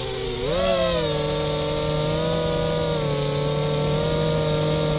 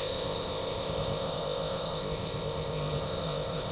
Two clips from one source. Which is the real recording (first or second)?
first